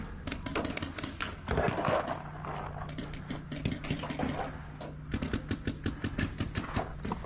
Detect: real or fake real